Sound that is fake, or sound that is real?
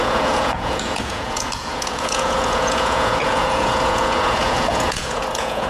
fake